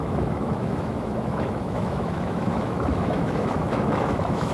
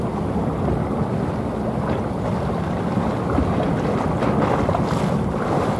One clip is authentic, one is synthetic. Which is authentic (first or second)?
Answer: second